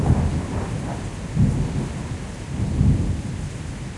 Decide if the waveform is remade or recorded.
recorded